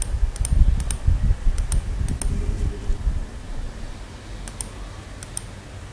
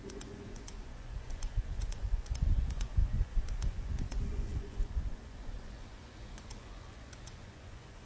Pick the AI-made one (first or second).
second